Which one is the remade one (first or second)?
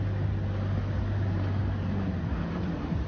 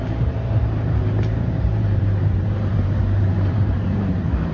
second